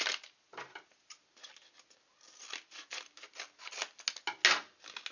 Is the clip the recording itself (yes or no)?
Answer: yes